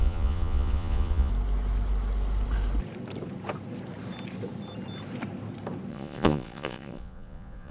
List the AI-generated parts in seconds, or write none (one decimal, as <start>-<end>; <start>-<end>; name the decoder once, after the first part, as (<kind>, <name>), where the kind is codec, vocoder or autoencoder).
0.0-1.3 (vocoder, Vocos); 5.9-7.7